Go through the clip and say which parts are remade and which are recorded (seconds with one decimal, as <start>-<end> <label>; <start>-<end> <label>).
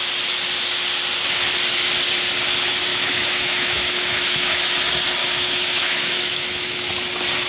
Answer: 0.0-2.9 recorded; 2.9-4.6 remade; 4.6-5.2 recorded; 5.2-6.9 remade; 6.9-7.5 recorded